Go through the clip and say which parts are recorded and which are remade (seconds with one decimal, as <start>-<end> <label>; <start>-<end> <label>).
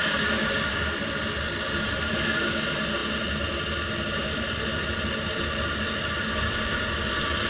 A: 0.0-7.5 recorded